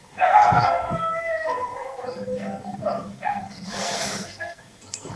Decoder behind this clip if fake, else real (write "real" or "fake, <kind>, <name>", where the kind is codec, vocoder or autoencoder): fake, codec, SNAC